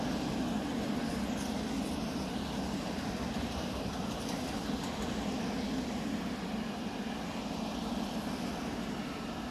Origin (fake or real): real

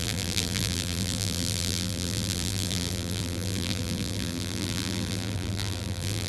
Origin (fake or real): fake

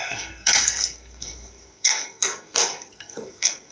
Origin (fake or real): fake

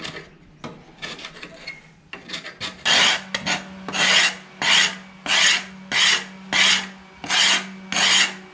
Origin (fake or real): real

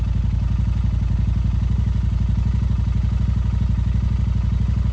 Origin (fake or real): real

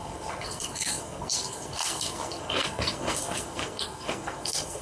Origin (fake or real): fake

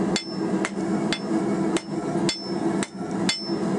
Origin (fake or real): real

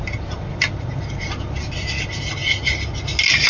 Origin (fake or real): real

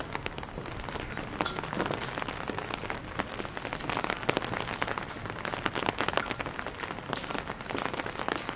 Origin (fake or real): real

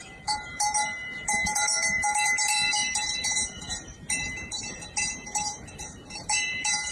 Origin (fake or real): fake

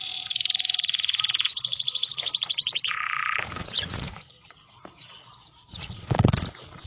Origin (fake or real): fake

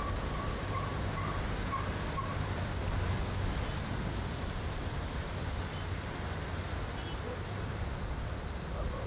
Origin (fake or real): real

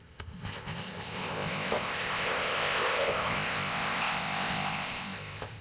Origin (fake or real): fake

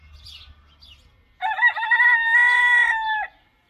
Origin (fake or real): real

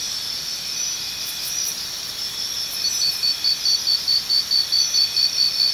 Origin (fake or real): real